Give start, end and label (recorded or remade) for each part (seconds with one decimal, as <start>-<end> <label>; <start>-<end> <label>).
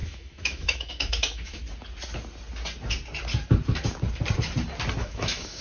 0.0-1.6 remade; 1.6-5.0 recorded; 5.0-5.6 remade